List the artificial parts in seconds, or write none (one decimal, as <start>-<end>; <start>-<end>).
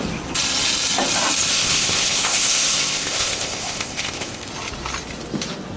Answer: 1.5-4.5